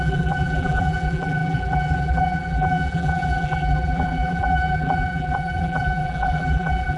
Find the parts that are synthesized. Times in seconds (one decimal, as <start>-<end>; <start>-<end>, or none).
0.0-7.0

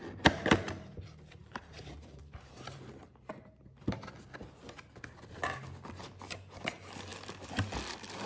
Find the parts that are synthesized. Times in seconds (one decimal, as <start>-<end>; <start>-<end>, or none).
1.4-3.3

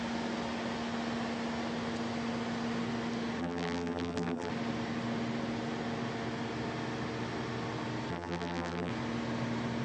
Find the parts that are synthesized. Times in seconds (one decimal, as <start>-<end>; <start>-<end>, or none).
3.4-4.5; 8.1-8.9

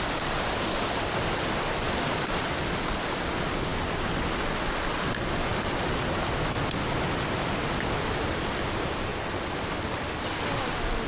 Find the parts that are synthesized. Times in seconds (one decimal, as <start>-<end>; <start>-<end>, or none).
9.1-9.7